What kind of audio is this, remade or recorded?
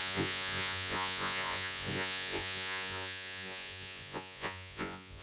remade